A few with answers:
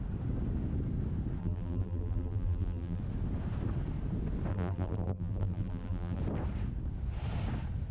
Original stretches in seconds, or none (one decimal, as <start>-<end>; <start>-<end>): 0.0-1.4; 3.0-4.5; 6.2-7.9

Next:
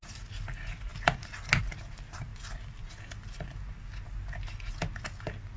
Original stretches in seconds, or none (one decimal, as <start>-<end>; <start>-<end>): 0.0-5.6

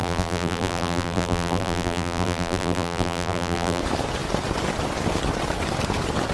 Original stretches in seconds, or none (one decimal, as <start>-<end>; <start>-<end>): 3.8-6.3